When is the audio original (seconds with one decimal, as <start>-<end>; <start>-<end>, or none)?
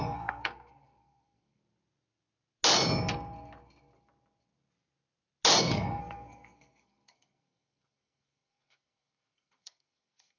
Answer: 1.6-5.6